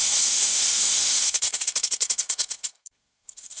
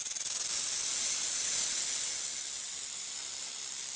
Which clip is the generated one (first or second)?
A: first